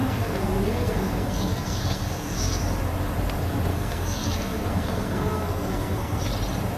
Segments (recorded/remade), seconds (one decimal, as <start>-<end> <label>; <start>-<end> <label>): 0.0-2.6 remade; 2.6-3.7 recorded; 3.7-6.2 remade; 6.2-6.8 recorded